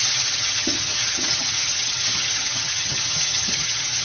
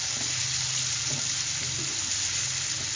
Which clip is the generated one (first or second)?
first